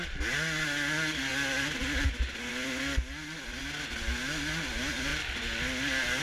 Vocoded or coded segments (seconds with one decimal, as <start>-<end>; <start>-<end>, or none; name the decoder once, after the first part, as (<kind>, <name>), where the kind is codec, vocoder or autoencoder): 2.5-3.6 (vocoder, BigVGAN v2)